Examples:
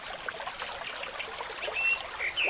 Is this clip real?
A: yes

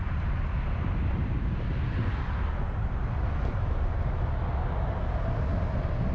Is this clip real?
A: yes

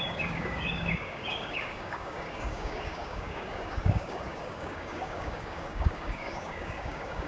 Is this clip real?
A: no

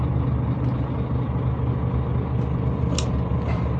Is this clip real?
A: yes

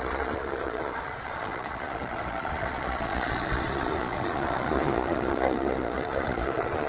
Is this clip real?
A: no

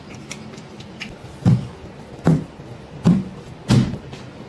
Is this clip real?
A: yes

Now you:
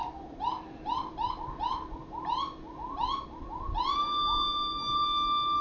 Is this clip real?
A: yes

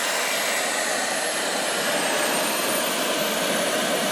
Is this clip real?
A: yes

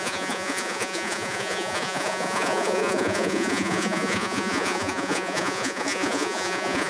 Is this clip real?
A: no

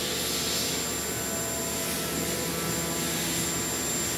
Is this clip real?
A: yes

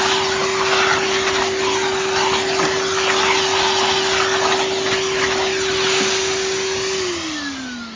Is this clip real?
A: yes